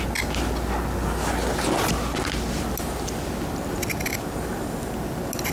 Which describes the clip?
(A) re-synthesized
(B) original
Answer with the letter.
B